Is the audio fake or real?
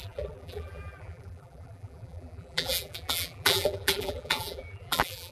fake